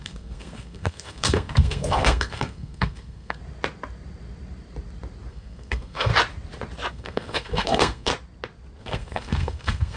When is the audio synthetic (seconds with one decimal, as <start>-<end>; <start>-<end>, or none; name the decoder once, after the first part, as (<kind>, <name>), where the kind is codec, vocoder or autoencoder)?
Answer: 0.0-3.4 (codec, SNAC); 5.3-6.1; 6.9-8.1; 8.8-10.0